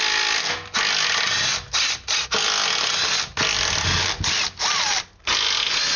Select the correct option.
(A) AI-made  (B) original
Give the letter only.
B